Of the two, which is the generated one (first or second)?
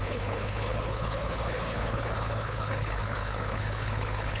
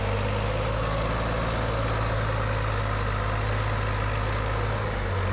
first